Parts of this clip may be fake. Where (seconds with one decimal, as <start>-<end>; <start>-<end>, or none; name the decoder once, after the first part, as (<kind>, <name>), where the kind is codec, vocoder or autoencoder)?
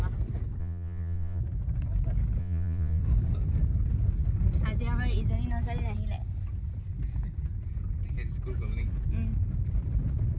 0.6-1.4 (vocoder, Vocos); 2.4-3.0